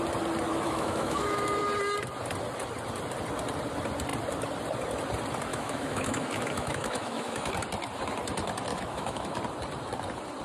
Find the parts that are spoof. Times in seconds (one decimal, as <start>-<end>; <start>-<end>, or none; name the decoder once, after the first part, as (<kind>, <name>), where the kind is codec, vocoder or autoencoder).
0.5-1.6 (autoencoder, DAC-VAE); 5.5-7.5; 8.7-9.4

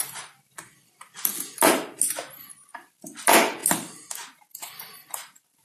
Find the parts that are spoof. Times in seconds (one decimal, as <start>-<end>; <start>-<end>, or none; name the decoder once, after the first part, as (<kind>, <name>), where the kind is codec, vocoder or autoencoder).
0.0-1.3 (vocoder, BigVGAN v2); 2.5-3.6; 4.4-5.6

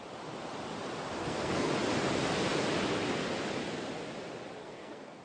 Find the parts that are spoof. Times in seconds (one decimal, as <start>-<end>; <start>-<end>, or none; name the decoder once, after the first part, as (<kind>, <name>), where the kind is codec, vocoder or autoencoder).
1.2-1.7 (codec, SNAC); 4.6-5.2